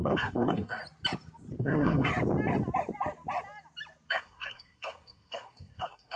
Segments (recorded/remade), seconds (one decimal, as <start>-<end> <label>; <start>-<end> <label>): 0.0-0.8 remade; 0.8-1.6 recorded; 1.6-2.1 remade; 2.1-4.1 recorded; 4.1-6.2 remade